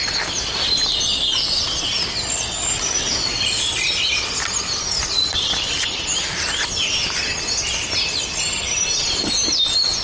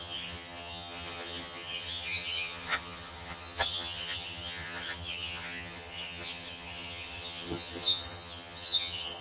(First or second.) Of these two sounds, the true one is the first